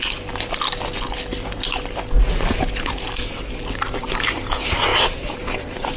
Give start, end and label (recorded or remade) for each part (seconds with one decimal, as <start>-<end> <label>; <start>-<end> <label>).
0.0-4.9 recorded; 4.9-6.0 remade